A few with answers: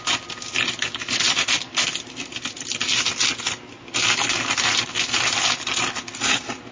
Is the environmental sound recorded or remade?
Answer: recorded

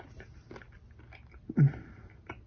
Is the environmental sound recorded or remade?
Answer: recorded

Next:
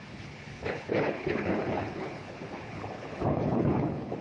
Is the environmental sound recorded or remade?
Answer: remade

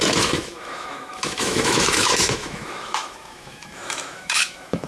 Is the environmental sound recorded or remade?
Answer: remade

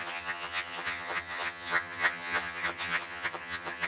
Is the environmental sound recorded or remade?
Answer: remade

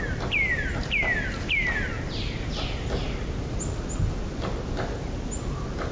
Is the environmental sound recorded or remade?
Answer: recorded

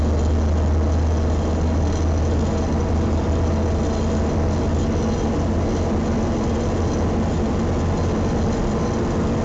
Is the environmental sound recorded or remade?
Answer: recorded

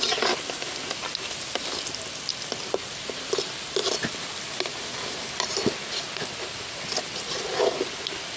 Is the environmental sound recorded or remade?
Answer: recorded